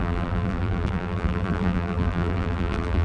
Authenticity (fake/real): fake